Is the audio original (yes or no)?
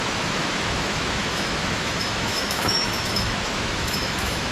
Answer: no